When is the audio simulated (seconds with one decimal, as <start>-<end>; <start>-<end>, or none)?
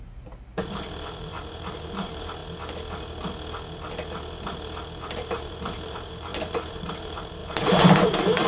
0.0-2.4; 5.0-8.5